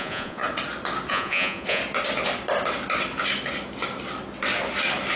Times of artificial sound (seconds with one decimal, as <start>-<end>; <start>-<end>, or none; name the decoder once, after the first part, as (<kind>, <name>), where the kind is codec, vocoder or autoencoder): 0.0-0.4 (vocoder, Vocos); 1.1-1.8